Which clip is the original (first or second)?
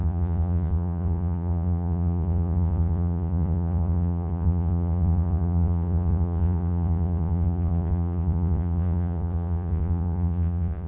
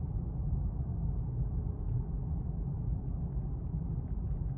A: second